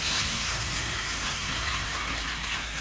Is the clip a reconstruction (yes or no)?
yes